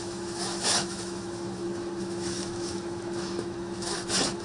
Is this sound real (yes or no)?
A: no